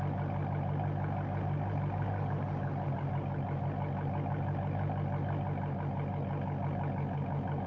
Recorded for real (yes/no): yes